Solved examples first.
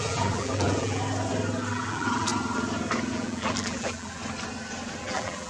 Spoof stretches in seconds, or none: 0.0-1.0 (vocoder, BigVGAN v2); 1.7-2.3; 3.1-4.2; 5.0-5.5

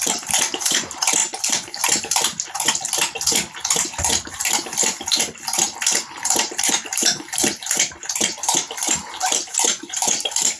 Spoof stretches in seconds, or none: 0.0-2.3 (vocoder, BigVGAN v2); 6.1-10.6